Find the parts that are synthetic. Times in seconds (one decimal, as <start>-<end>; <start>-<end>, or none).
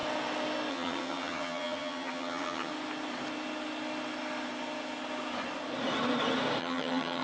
0.7-2.7; 6.6-7.2